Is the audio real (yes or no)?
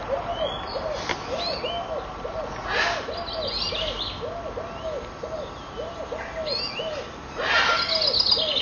yes